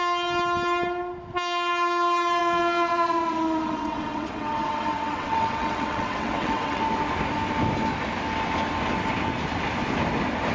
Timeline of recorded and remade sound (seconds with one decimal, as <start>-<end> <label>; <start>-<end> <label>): 0.0-2.4 recorded; 2.4-6.8 remade; 6.8-10.5 recorded